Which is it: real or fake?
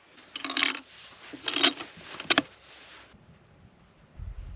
real